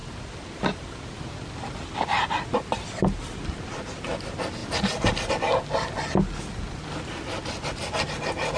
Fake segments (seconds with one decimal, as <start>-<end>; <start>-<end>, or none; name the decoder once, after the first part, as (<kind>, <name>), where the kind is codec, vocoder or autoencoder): none

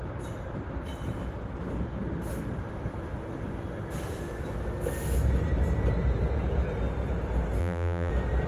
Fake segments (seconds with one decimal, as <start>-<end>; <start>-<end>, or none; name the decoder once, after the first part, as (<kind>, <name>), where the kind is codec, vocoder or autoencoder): 7.6-8.1 (vocoder, BigVGAN v2)

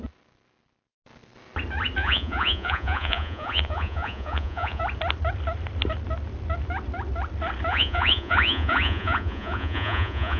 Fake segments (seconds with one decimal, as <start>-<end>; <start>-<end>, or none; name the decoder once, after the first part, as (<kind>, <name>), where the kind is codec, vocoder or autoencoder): 2.0-4.8 (vocoder, Vocos); 7.7-10.4

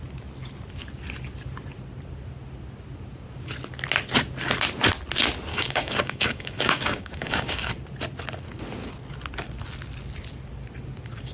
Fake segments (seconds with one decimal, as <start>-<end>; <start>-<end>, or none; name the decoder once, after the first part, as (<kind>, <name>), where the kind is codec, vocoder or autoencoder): 5.5-7.7 (codec, DAC)

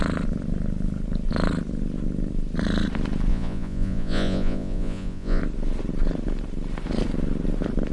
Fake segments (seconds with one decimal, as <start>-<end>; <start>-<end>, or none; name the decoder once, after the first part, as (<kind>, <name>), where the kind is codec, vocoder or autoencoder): 3.3-5.4 (vocoder, Vocos)